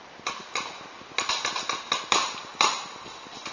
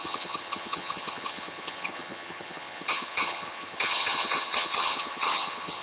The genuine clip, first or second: first